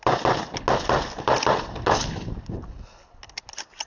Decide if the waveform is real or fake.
real